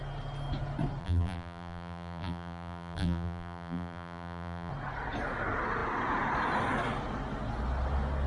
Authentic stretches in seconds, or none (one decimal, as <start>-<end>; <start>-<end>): 0.0-1.0; 4.7-8.3